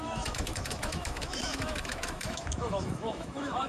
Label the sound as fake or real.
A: fake